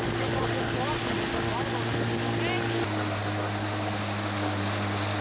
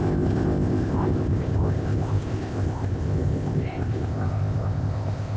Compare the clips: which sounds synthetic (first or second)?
second